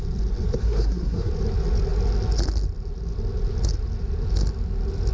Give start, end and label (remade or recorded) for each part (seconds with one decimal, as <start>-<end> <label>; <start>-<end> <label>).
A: 0.0-0.6 recorded; 0.6-1.3 remade; 1.3-5.1 recorded